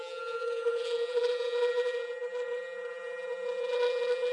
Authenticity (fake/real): fake